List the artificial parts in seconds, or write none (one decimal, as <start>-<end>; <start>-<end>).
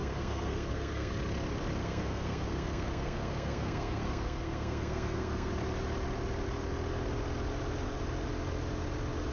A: 0.0-1.1; 1.8-5.5